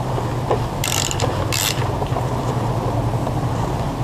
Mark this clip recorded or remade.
recorded